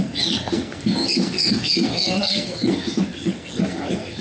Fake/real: fake